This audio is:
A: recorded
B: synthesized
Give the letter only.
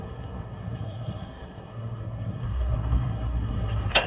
B